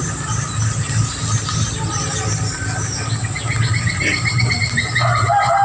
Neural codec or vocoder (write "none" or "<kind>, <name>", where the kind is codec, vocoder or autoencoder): none